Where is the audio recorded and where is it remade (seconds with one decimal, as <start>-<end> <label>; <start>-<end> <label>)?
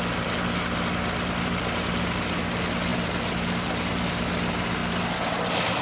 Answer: 0.0-5.8 recorded